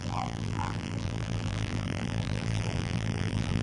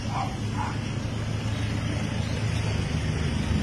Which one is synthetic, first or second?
first